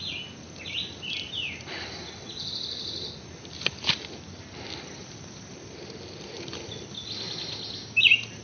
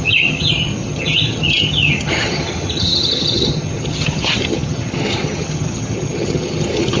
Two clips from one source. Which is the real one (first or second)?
first